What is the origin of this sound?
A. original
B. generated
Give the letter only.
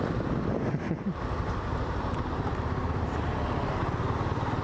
A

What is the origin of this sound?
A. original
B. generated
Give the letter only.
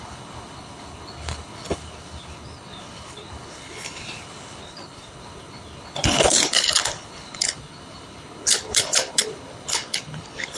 B